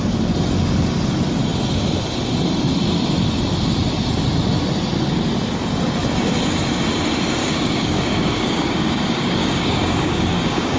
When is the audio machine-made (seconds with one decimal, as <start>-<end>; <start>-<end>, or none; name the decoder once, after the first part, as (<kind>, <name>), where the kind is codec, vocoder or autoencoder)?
7.4-10.8 (codec, DAC)